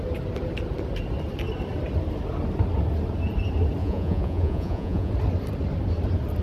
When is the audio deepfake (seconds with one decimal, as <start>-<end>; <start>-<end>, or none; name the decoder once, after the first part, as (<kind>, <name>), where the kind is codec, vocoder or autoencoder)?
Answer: 3.8-5.1 (vocoder, Vocos)